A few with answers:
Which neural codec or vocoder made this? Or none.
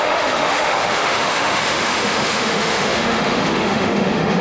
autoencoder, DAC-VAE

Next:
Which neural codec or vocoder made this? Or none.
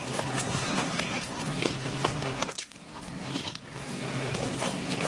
codec, SNAC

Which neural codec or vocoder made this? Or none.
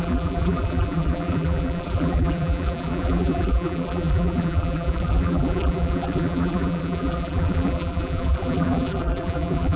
vocoder, BigVGAN v2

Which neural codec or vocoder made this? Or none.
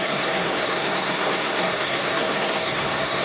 codec, SNAC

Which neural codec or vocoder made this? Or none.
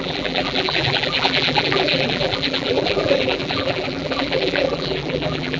vocoder, BigVGAN v2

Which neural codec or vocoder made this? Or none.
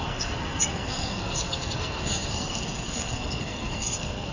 codec, SNAC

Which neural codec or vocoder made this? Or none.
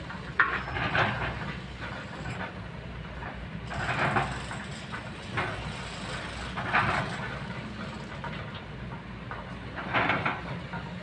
none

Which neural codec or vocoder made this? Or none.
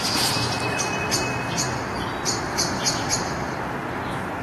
vocoder, BigVGAN v2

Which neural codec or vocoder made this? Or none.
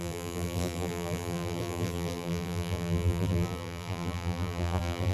vocoder, BigVGAN v2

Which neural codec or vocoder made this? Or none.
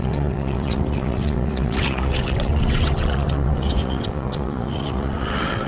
vocoder, WaveNeXt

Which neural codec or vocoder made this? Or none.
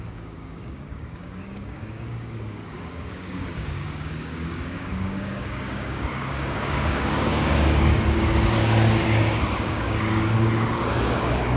codec, DAC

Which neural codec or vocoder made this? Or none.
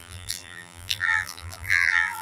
vocoder, BigVGAN v2